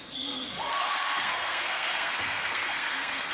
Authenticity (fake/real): fake